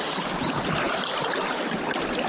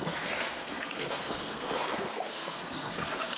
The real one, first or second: first